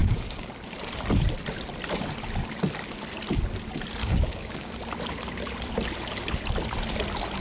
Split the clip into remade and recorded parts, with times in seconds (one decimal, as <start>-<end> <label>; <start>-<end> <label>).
0.0-0.5 remade; 0.5-4.0 recorded; 4.0-4.7 remade; 4.7-7.4 recorded